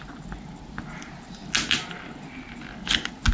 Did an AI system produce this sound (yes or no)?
no